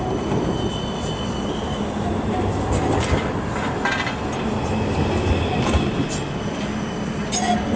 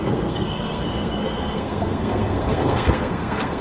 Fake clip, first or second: second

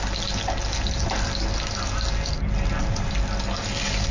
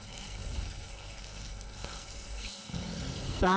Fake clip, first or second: second